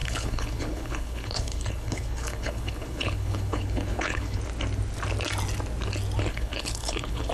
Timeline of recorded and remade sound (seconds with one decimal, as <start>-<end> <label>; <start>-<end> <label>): 0.0-4.4 remade; 4.4-6.3 recorded; 6.3-7.3 remade